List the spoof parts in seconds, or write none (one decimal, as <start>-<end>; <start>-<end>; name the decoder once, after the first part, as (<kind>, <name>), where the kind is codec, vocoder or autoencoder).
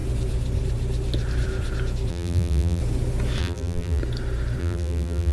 2.1-2.8 (vocoder, BigVGAN v2); 3.4-4.0; 4.6-5.3